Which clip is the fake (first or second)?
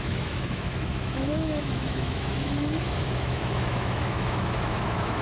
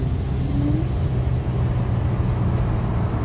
first